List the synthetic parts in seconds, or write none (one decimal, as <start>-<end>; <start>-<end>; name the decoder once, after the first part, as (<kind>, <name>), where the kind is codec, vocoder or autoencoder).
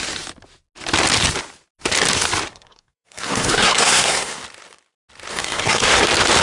2.5-4.4 (codec, SNAC); 5.3-6.0